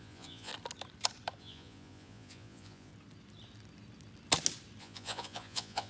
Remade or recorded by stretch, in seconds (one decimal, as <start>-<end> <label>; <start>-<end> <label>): 0.0-0.5 remade; 0.5-1.4 recorded; 1.4-2.9 remade; 2.9-4.8 recorded; 4.8-5.9 remade